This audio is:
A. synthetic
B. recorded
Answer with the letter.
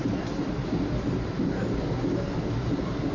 B